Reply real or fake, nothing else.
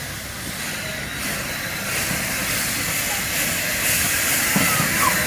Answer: real